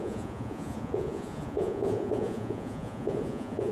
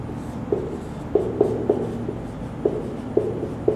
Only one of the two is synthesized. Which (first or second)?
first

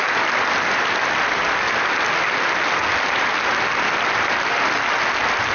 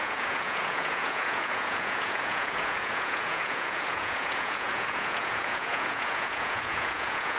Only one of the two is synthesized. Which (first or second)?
second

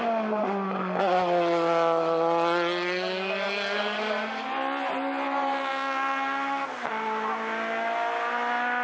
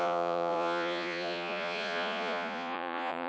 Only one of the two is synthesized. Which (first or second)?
second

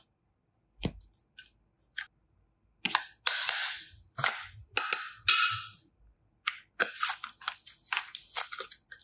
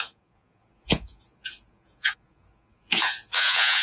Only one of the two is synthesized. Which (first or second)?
second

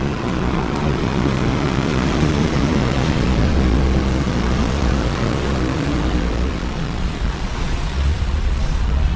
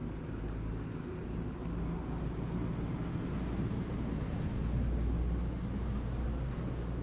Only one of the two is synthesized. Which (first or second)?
first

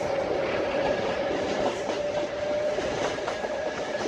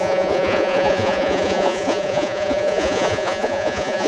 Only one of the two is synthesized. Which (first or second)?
second